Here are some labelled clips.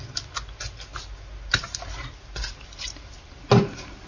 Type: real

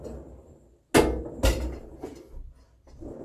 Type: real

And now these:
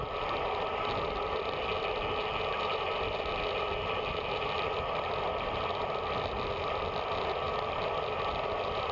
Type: real